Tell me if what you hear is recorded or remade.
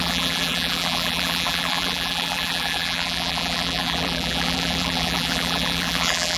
remade